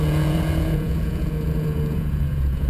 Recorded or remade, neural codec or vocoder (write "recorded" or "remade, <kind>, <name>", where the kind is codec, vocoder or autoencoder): remade, vocoder, Vocos